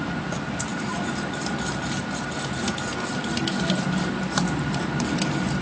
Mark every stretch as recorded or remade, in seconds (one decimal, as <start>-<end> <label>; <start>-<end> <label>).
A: 0.0-0.7 remade; 0.7-4.1 recorded; 4.1-5.6 remade